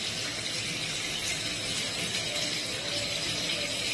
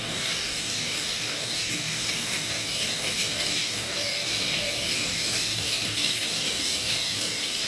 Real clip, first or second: first